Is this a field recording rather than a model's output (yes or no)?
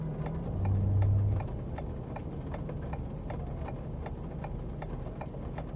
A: yes